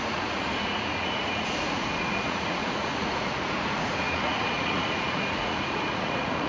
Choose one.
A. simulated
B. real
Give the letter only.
A